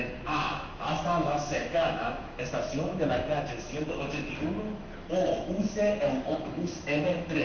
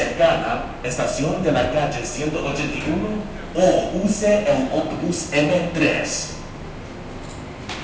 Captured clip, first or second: second